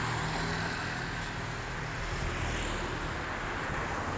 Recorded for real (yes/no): yes